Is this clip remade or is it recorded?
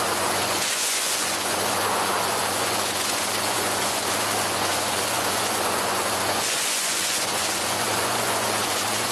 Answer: remade